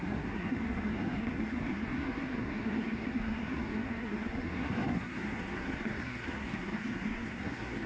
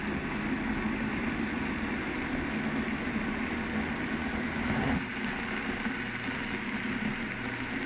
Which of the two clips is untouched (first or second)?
second